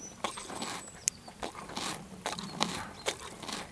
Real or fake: real